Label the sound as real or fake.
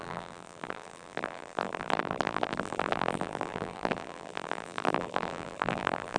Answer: fake